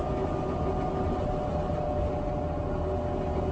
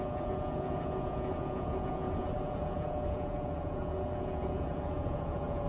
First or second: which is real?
first